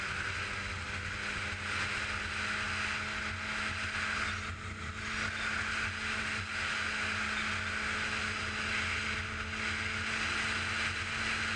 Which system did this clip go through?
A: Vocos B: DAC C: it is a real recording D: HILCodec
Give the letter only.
C